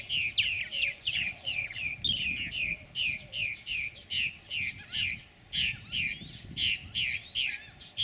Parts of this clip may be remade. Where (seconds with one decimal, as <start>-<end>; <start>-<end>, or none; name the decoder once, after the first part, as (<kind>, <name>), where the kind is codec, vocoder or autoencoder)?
0.9-2.0 (vocoder, Vocos)